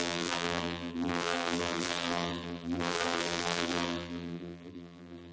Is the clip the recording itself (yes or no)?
no